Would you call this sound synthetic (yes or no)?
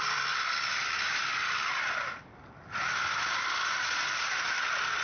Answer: no